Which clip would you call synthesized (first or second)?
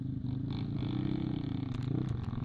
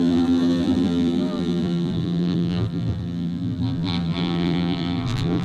second